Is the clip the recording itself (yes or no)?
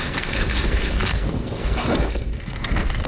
no